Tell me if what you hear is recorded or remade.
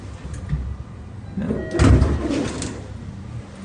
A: recorded